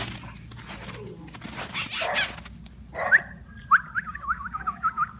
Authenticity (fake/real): real